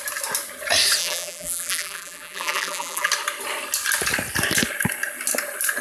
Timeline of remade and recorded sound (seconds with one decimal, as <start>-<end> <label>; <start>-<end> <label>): 0.0-1.0 recorded; 1.0-3.1 remade; 3.1-5.8 recorded